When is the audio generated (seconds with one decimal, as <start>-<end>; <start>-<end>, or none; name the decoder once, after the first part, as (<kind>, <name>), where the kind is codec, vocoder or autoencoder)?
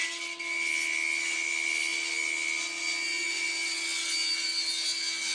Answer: none